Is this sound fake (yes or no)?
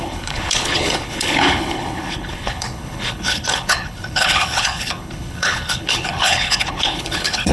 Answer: yes